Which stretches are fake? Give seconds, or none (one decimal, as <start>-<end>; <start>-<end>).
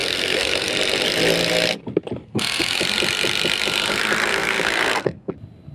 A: 0.0-0.7; 2.3-2.8; 4.3-5.3